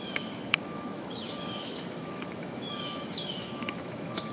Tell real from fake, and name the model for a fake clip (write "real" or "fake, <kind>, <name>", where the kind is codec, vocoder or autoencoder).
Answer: fake, autoencoder, DAC-VAE